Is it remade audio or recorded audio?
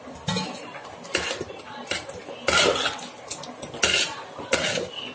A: recorded